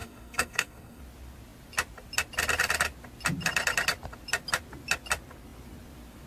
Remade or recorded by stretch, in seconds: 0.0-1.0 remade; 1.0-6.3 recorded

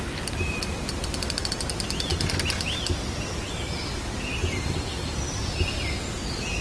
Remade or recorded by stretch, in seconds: 0.0-6.6 recorded

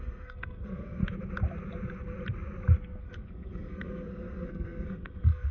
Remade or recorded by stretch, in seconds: 0.0-1.0 remade; 1.0-3.0 recorded; 3.0-5.5 remade

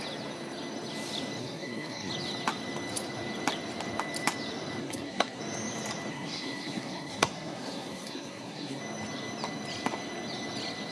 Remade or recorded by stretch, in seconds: 0.0-1.4 recorded; 1.4-2.1 remade; 2.1-4.8 recorded; 4.8-5.4 remade; 5.4-6.1 recorded; 6.1-8.8 remade; 8.8-10.9 recorded

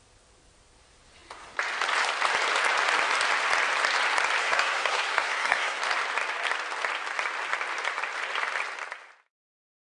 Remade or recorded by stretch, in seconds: 0.0-4.4 recorded; 4.4-5.8 remade; 5.8-10.0 recorded

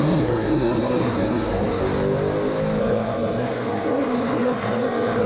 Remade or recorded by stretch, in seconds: 0.0-1.8 remade; 1.8-2.8 recorded; 2.8-5.3 remade

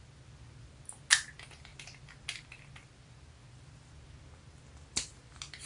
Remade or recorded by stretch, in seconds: 0.0-5.7 recorded

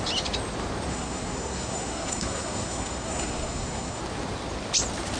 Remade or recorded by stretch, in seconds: 0.0-0.9 recorded; 0.9-4.0 remade; 4.0-5.2 recorded